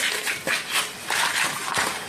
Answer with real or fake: real